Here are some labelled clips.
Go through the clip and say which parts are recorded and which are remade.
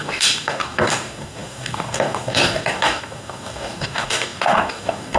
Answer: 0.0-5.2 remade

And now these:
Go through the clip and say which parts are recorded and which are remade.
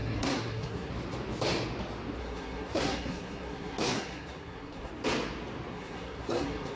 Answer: 0.0-0.9 remade; 0.9-2.2 recorded; 2.2-4.9 remade; 4.9-5.7 recorded; 5.7-6.8 remade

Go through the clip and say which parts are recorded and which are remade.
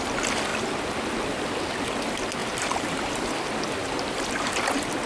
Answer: 0.0-2.4 recorded; 2.4-3.1 remade; 3.1-3.8 recorded; 3.8-4.5 remade; 4.5-5.1 recorded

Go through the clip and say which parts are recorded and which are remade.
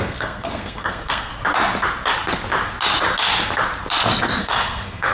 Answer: 0.0-1.3 remade; 1.3-4.4 recorded; 4.4-5.1 remade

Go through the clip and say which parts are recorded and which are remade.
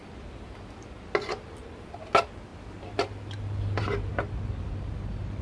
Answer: 0.0-5.4 recorded